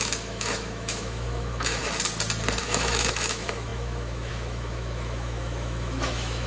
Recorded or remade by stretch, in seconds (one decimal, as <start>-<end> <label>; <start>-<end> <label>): 0.0-1.8 remade; 1.8-2.6 recorded; 2.6-6.5 remade

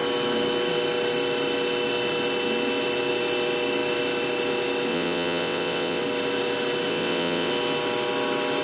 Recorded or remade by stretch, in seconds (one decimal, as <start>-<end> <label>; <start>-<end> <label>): 0.0-4.9 recorded; 4.9-6.0 remade; 6.0-6.9 recorded; 6.9-7.5 remade; 7.5-8.6 recorded